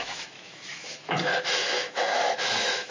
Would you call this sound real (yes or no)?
no